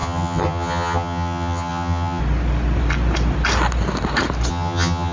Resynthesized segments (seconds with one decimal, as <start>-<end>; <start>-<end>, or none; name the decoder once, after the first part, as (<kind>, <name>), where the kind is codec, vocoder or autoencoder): 0.0-2.2 (vocoder, HiFi-GAN); 4.5-5.1

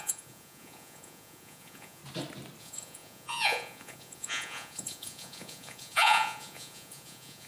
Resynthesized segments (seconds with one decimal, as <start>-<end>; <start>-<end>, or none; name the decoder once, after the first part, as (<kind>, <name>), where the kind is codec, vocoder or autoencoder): 0.0-2.0 (vocoder, Vocos); 2.6-7.5

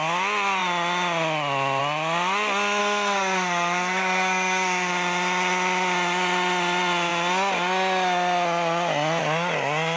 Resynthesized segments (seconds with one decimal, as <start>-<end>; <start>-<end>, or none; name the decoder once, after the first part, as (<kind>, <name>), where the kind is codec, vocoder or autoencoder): 2.8-4.9 (codec, SNAC)

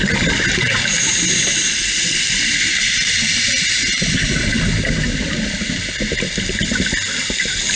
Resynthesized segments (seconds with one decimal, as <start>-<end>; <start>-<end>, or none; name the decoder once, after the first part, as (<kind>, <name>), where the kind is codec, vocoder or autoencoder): 0.5-4.0 (vocoder, BigVGAN v2)

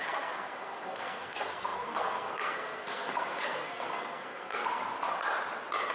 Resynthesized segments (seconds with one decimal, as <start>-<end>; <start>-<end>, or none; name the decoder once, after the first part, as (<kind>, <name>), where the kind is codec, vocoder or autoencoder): 0.0-4.8 (codec, SNAC)

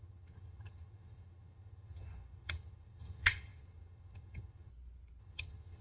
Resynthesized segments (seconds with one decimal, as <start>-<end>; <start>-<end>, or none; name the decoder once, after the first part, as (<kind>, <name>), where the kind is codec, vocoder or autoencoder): 0.0-4.7 (vocoder, HiFi-GAN); 5.2-5.8

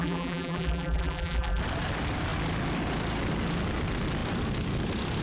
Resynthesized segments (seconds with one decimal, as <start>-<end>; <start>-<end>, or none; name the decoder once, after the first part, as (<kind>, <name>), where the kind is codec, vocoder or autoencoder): 0.0-1.6 (vocoder, BigVGAN v2)